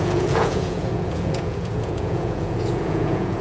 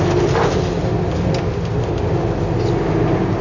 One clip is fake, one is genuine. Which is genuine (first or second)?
second